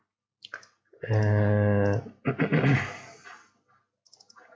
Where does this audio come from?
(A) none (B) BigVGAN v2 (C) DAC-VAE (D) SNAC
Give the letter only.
A